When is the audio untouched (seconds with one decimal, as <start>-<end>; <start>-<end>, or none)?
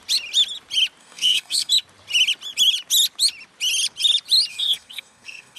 0.0-1.0; 1.7-4.5